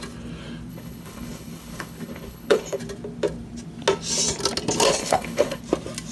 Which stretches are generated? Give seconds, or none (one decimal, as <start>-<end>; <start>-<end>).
0.7-2.8; 5.0-5.6